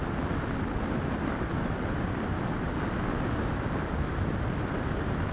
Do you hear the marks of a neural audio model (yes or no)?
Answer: no